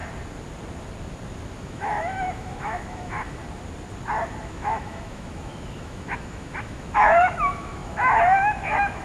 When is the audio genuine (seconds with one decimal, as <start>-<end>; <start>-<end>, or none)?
0.0-1.6; 3.4-4.4